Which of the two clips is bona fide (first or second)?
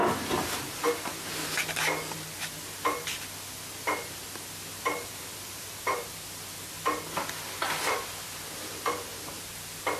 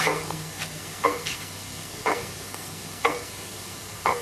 first